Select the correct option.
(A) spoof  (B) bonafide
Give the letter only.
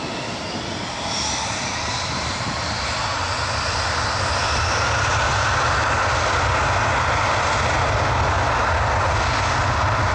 B